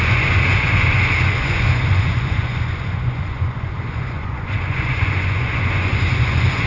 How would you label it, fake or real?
fake